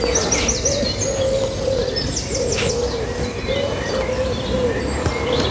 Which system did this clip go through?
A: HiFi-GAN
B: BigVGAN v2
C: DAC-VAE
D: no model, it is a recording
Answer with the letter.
D